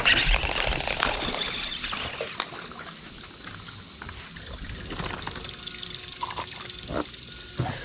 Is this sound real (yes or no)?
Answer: yes